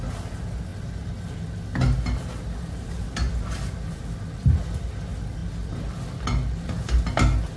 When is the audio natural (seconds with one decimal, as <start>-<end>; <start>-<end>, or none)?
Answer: 0.0-7.6